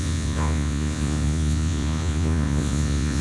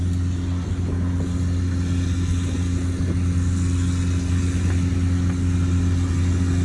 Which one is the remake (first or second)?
first